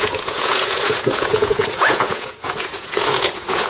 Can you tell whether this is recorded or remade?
remade